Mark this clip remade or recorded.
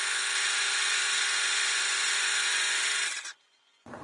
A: remade